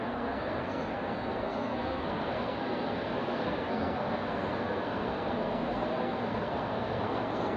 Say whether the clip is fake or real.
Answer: fake